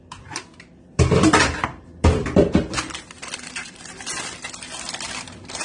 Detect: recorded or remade remade